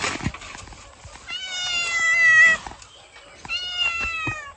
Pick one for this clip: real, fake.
real